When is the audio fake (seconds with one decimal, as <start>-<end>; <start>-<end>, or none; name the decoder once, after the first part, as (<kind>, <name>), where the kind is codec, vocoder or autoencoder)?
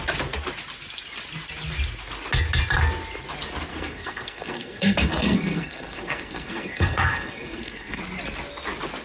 3.7-8.0 (codec, SNAC)